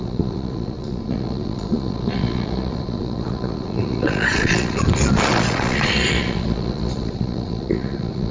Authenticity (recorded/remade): remade